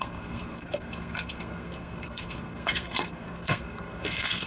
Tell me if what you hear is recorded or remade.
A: remade